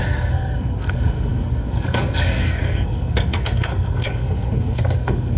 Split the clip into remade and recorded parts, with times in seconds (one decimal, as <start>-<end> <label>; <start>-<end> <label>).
0.0-5.4 remade